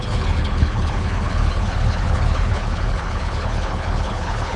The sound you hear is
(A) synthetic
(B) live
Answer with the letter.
A